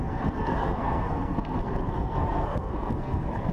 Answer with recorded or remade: remade